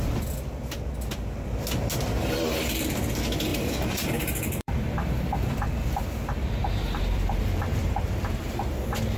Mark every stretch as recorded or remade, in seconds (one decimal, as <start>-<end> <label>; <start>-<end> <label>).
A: 0.0-3.5 recorded; 3.5-5.6 remade; 5.6-6.6 recorded; 6.6-8.7 remade; 8.7-9.2 recorded